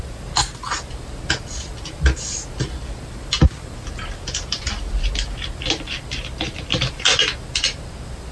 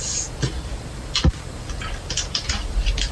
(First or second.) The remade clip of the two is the second